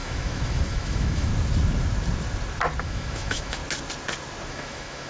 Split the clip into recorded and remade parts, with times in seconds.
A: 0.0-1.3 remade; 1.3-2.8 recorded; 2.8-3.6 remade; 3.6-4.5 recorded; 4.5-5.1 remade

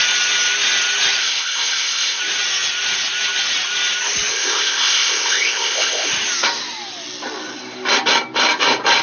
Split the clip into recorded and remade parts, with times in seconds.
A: 0.0-1.2 recorded; 1.2-2.2 remade; 2.2-4.3 recorded; 4.3-6.1 remade; 6.1-9.0 recorded

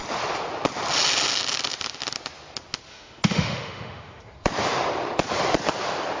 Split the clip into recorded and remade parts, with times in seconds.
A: 0.0-2.9 recorded; 2.9-4.2 remade; 4.2-6.2 recorded

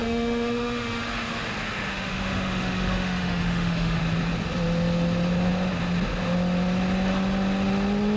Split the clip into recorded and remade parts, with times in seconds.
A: 0.0-1.1 remade; 1.1-1.9 recorded; 1.9-4.0 remade; 4.0-8.2 recorded

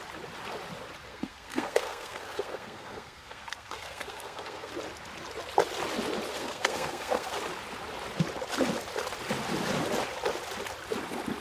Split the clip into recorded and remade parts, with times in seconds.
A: 0.0-1.1 recorded; 1.1-4.7 remade; 4.7-6.3 recorded; 6.3-7.4 remade; 7.4-11.4 recorded

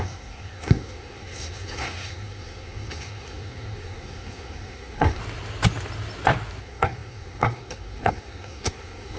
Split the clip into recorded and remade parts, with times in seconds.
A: 0.0-5.2 remade; 5.2-6.6 recorded; 6.6-9.2 remade